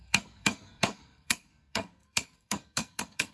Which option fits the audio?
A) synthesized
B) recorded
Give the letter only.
A